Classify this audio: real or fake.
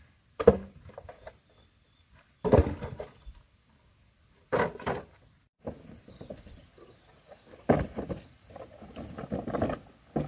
real